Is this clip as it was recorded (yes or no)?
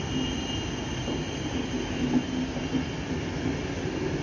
yes